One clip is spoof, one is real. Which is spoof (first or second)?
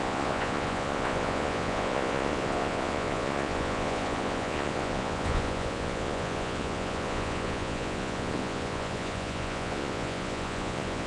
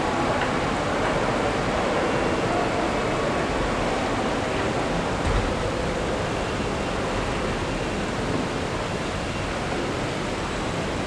first